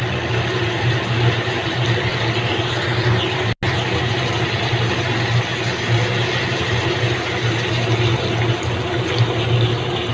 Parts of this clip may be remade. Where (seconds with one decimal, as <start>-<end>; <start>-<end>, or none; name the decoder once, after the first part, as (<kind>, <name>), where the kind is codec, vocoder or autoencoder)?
none